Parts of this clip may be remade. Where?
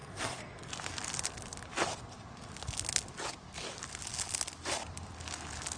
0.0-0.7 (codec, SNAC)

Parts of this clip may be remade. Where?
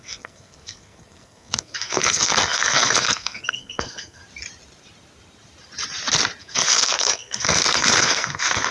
0.0-4.2 (codec, SNAC); 6.4-8.7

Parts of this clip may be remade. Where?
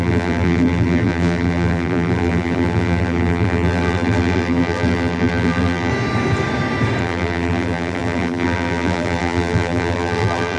0.0-5.9 (vocoder, BigVGAN v2); 7.0-10.6